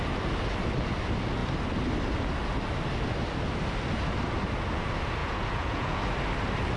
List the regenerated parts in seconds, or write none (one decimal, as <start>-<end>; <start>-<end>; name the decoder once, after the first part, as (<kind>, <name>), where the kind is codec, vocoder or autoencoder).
5.2-6.0 (vocoder, Vocos)

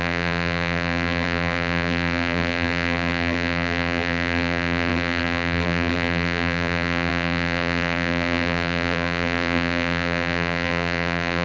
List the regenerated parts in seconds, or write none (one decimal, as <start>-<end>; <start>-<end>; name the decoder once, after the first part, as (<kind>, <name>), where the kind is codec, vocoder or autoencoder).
0.0-11.4 (vocoder, BigVGAN v2)

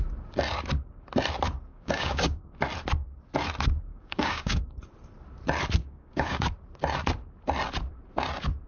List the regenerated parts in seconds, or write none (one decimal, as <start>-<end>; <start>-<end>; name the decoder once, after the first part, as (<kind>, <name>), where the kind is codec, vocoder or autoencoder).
1.7-2.4 (codec, DAC); 3.9-4.6; 5.8-6.5

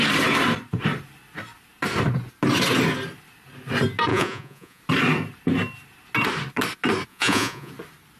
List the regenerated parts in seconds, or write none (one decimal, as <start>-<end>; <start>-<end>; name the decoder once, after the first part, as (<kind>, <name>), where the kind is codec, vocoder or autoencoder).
4.1-4.8 (vocoder, Vocos); 7.1-7.7

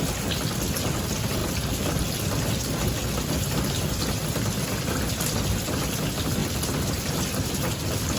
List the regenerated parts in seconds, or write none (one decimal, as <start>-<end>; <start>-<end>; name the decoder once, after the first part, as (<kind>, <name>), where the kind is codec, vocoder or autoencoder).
none